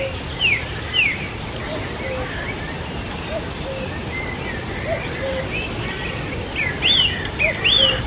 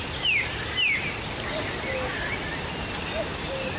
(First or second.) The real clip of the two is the second